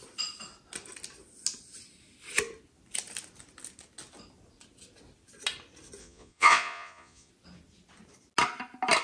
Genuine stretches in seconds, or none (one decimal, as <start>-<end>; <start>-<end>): 0.0-6.0; 7.3-9.0